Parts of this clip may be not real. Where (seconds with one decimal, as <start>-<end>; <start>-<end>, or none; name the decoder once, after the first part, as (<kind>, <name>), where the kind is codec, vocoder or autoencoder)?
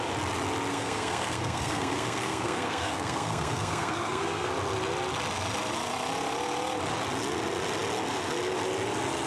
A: 0.7-4.5 (codec, SNAC)